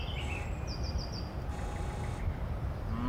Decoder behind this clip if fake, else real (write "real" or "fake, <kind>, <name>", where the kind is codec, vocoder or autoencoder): fake, vocoder, BigVGAN v2